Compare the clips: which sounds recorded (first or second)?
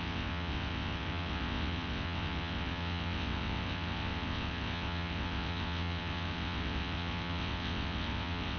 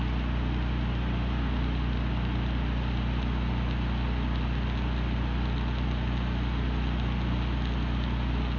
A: second